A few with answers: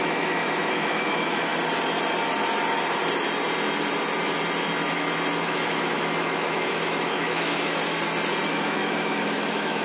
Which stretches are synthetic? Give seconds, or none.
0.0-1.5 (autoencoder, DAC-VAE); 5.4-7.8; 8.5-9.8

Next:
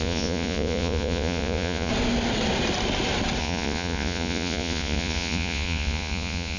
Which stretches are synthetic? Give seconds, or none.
0.0-1.9 (vocoder, Vocos); 3.4-6.6